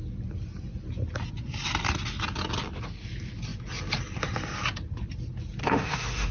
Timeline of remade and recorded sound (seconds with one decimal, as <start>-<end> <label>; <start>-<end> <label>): 0.0-5.6 recorded; 5.6-6.3 remade